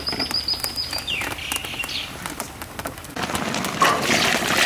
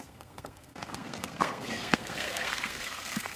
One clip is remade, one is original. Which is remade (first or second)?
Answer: second